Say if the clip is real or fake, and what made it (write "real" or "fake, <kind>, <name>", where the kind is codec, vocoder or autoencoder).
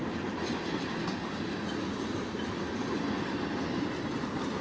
real